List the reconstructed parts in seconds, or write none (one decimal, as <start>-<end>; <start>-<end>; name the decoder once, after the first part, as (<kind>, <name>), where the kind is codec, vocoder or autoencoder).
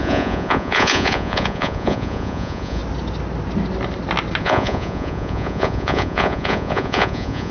0.0-2.8 (vocoder, Vocos); 4.4-7.5